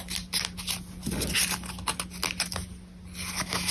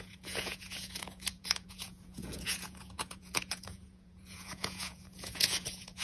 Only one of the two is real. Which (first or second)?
first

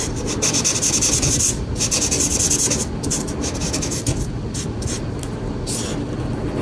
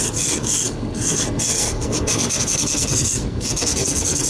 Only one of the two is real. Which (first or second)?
first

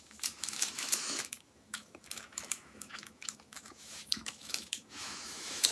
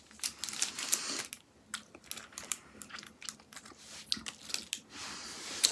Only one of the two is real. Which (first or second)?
second